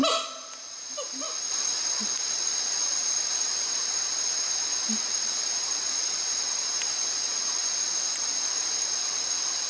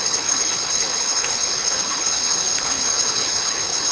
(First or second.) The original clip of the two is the first